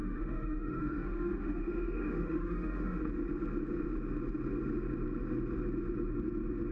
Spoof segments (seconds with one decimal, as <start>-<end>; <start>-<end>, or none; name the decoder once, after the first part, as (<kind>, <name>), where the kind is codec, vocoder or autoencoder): 0.0-3.0 (autoencoder, DAC-VAE)